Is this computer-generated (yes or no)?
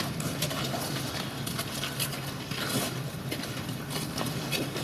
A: no